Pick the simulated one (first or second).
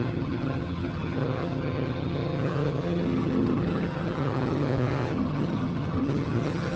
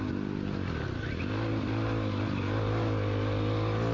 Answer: first